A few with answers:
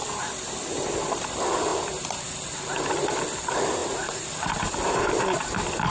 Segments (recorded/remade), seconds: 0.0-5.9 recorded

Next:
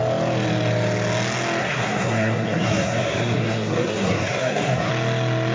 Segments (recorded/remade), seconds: 0.0-1.6 recorded; 1.6-4.9 remade; 4.9-5.5 recorded

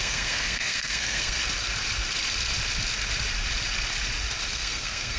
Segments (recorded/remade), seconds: 0.0-1.4 remade; 1.4-4.5 recorded; 4.5-5.2 remade

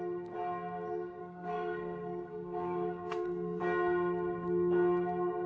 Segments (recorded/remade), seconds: 0.0-1.2 recorded; 1.2-3.6 remade; 3.6-5.5 recorded

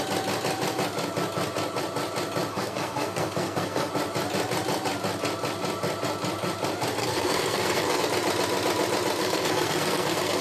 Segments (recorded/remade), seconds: 0.0-2.5 recorded; 2.5-3.9 remade; 3.9-7.0 recorded; 7.0-8.0 remade; 8.0-9.2 recorded; 9.2-10.4 remade